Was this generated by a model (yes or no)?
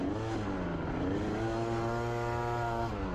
no